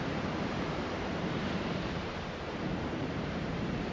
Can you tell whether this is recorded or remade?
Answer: remade